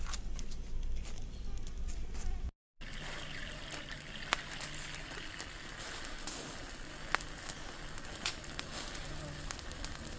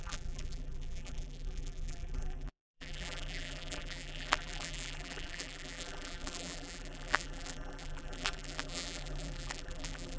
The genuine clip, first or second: first